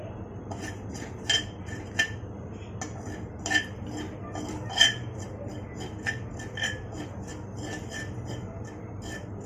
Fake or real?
real